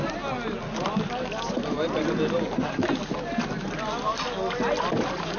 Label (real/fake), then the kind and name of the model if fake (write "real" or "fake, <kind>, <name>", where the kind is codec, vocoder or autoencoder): real